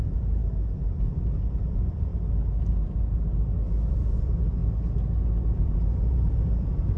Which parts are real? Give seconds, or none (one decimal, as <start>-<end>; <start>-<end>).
0.4-1.0; 2.1-3.9; 4.6-5.6